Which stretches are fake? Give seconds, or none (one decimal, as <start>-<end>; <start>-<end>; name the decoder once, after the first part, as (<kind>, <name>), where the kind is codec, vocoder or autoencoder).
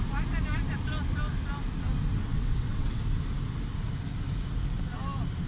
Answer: 2.2-3.0 (vocoder, WaveNeXt)